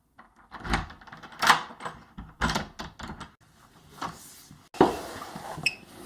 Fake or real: real